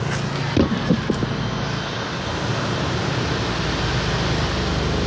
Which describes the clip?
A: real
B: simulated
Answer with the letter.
A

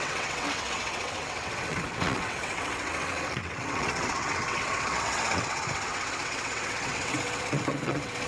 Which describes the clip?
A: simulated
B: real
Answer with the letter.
A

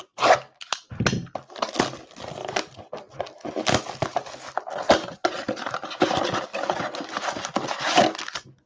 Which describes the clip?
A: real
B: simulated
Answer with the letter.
A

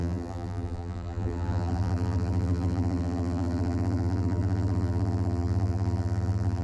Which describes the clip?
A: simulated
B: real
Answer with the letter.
A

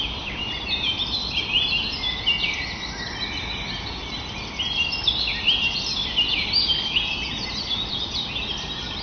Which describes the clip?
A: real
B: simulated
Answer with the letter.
A